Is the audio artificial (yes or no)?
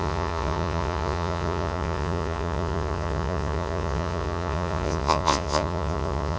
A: yes